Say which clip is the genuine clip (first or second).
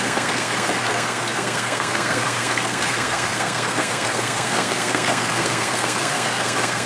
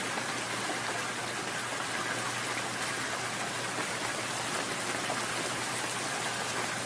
second